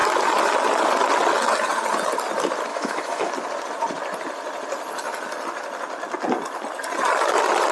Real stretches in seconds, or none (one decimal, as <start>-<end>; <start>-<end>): 0.0-2.7; 3.3-7.7